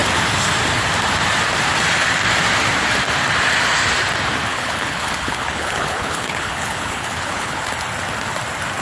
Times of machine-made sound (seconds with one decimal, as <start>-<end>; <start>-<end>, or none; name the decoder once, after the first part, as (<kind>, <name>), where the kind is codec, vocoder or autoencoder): 4.5-7.6 (codec, HILCodec)